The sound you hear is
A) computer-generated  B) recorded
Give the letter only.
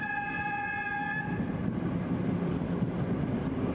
B